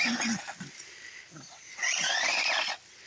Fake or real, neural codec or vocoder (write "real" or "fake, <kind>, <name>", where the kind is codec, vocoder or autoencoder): real